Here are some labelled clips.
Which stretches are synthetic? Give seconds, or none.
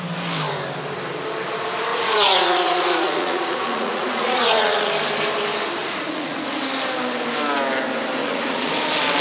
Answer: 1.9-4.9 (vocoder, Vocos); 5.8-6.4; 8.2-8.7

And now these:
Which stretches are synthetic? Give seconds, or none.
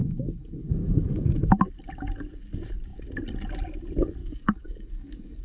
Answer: 0.0-1.6 (codec, DAC); 4.2-5.4